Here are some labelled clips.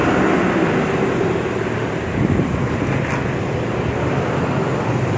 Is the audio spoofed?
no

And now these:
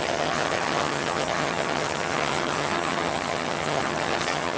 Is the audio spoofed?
yes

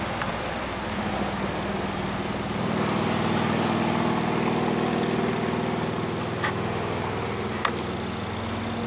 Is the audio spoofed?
no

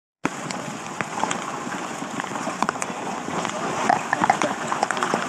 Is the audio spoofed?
yes